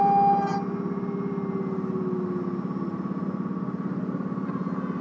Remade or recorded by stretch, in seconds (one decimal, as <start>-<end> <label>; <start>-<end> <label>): 0.0-5.0 recorded